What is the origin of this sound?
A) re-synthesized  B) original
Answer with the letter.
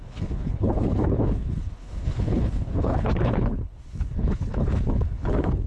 A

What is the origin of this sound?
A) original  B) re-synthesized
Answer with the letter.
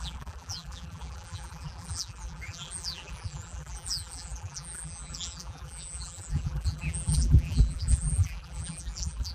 B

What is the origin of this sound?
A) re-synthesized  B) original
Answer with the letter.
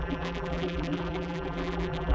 A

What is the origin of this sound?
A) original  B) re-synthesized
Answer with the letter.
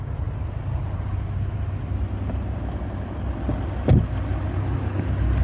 A